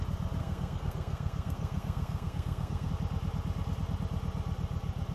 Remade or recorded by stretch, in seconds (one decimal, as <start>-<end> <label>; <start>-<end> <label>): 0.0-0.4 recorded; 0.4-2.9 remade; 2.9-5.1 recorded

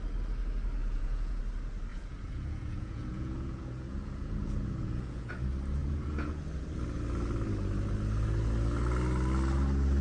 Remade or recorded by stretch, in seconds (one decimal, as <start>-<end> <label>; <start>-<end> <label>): 0.0-0.8 recorded; 0.8-1.4 remade; 1.4-1.9 recorded; 1.9-5.3 remade; 5.3-5.8 recorded; 5.8-6.4 remade; 6.4-10.0 recorded

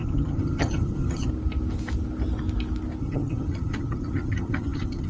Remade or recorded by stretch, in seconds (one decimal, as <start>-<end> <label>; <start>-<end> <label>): 0.0-1.3 remade; 1.3-3.0 recorded; 3.0-5.1 remade